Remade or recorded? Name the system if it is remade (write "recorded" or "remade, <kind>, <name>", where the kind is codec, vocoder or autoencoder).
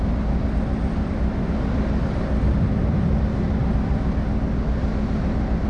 recorded